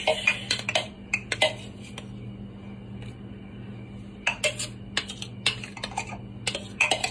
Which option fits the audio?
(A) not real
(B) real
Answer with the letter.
B